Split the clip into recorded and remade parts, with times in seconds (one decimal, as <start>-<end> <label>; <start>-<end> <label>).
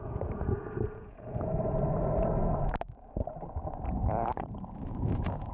0.0-1.5 remade; 1.5-4.8 recorded; 4.8-5.5 remade